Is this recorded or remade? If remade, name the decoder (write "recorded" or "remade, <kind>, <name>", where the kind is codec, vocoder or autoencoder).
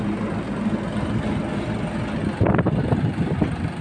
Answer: recorded